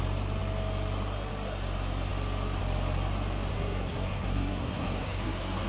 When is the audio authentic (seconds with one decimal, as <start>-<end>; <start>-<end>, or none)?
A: 0.0-3.5